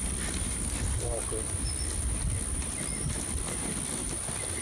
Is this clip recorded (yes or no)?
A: yes